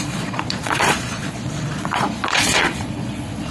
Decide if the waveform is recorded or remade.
remade